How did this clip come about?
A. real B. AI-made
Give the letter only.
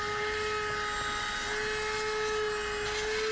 A